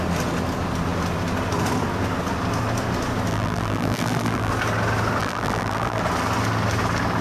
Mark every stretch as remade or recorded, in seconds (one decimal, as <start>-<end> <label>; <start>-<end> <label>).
0.0-3.3 recorded; 3.3-4.5 remade; 4.5-5.2 recorded; 5.2-6.0 remade; 6.0-7.2 recorded